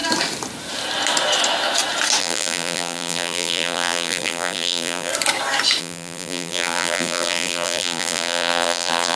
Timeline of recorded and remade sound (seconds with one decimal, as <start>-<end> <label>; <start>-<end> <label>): 0.0-2.2 recorded; 2.2-5.1 remade; 5.1-5.8 recorded; 5.8-9.2 remade